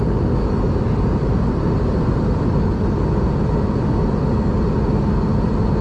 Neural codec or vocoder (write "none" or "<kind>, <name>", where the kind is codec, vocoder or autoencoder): none